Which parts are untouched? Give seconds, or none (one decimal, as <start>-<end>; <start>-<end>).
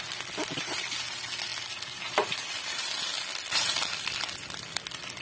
0.0-5.2